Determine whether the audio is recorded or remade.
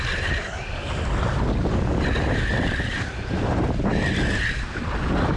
recorded